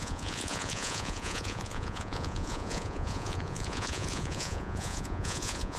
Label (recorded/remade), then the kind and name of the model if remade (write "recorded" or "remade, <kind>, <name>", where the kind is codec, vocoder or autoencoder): remade, vocoder, Vocos